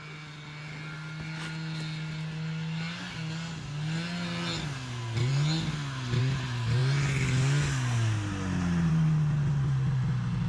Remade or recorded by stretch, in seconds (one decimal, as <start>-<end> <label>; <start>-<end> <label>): 0.0-10.5 recorded